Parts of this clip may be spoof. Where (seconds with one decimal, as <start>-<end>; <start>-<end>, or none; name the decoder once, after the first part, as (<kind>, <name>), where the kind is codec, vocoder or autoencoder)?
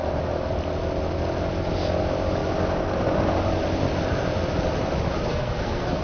5.3-6.0 (codec, SNAC)